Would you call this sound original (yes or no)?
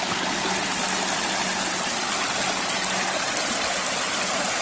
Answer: yes